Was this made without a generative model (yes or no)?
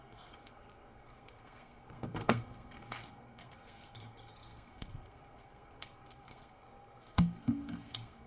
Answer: no